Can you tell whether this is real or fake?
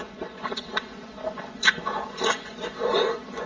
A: fake